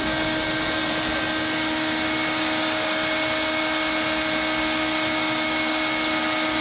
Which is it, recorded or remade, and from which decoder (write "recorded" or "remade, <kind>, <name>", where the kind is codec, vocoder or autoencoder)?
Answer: recorded